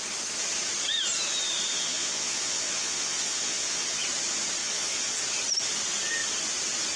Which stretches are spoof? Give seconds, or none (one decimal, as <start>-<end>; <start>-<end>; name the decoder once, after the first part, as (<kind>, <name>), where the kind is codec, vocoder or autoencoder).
1.7-4.0 (vocoder, Vocos); 4.6-5.2